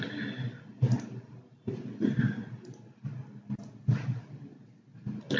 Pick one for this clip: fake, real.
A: real